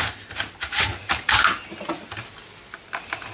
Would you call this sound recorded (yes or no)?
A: yes